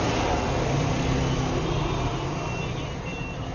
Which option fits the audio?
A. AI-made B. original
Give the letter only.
B